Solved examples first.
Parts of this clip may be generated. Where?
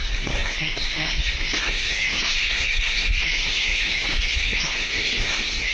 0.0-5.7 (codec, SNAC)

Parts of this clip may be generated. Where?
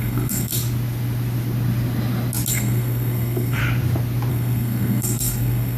0.0-0.5 (codec, SNAC); 2.5-3.6; 4.3-5.8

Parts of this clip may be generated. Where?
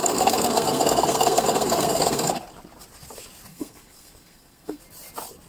0.0-2.3 (codec, SNAC); 3.5-4.8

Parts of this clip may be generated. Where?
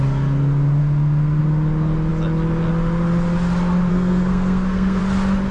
0.8-1.4 (codec, SNAC); 3.9-5.0